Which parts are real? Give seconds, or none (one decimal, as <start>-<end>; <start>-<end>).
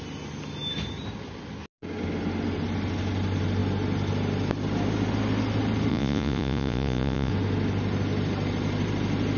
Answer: 0.0-5.9; 7.3-9.4